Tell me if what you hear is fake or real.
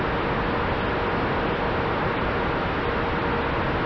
real